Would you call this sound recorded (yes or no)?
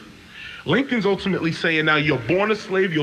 no